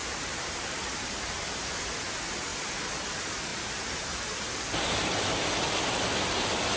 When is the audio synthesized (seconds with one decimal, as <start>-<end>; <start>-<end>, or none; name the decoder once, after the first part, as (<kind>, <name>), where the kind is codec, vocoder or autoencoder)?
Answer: 0.0-1.7 (vocoder, BigVGAN v2); 3.5-4.2